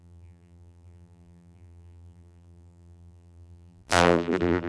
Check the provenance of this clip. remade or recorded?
remade